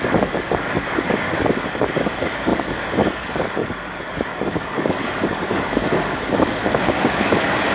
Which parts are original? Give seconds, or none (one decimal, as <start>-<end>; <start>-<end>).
none